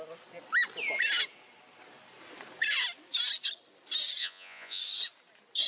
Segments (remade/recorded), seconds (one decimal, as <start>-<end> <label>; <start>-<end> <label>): 0.0-4.2 recorded; 4.2-4.8 remade; 4.8-5.7 recorded